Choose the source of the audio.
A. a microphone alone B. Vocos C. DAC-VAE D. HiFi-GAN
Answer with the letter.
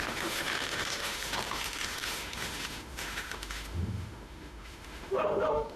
C